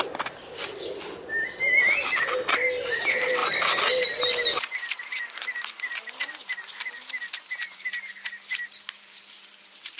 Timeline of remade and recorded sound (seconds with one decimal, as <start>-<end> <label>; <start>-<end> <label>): 0.0-10.0 recorded